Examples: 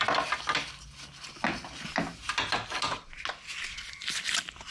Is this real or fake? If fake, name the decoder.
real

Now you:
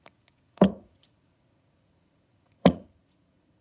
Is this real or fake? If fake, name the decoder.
fake, vocoder, Vocos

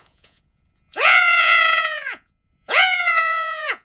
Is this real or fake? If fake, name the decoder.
fake, vocoder, Vocos